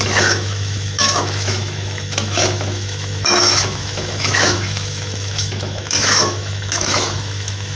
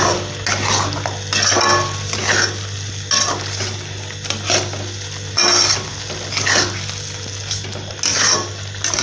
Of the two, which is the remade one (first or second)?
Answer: first